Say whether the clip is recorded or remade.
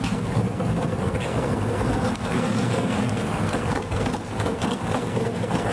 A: remade